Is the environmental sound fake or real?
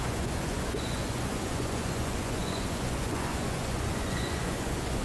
fake